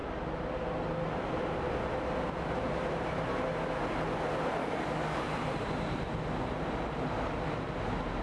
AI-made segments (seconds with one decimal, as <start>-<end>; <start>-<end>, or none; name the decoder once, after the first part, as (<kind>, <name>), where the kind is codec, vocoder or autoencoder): 4.6-5.2 (codec, DAC)